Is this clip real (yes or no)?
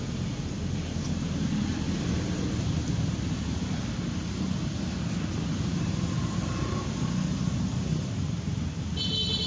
yes